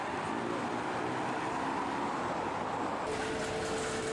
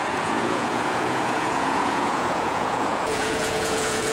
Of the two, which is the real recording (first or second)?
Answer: first